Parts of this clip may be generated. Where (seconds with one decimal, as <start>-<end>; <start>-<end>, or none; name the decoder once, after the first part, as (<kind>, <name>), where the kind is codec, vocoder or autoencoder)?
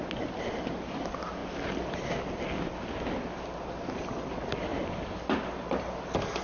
none